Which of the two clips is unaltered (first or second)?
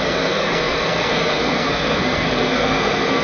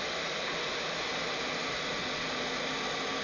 second